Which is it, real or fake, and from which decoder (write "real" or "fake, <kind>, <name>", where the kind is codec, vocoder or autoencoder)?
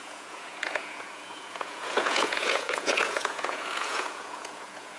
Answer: fake, vocoder, Vocos